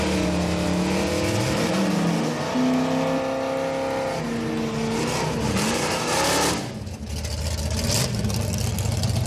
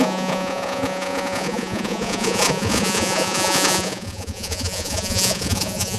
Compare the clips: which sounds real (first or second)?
first